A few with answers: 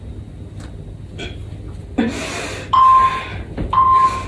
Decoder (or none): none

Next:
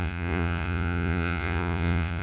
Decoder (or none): vocoder, Vocos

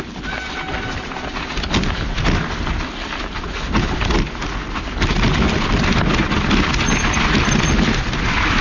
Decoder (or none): none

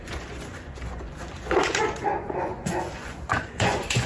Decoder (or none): vocoder, Vocos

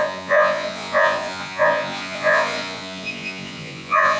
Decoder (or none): vocoder, Vocos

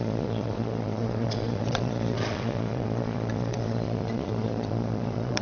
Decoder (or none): vocoder, Vocos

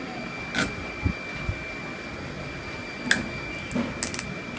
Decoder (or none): none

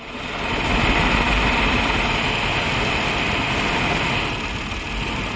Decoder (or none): none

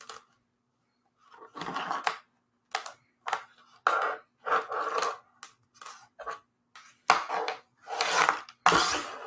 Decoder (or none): none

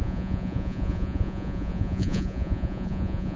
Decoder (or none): vocoder, Vocos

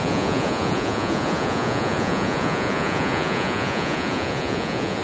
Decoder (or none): vocoder, Vocos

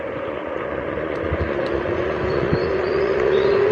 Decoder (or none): vocoder, Vocos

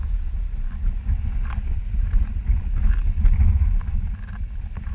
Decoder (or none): none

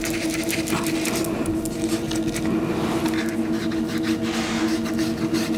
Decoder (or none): none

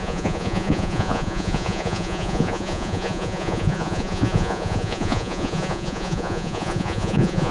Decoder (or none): vocoder, Vocos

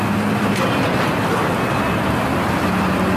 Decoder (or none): none